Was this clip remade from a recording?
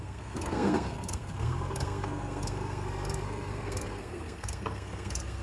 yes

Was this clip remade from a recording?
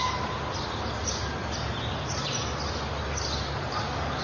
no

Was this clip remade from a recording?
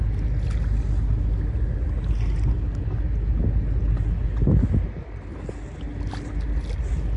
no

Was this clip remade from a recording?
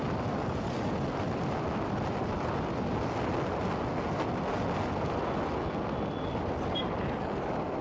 no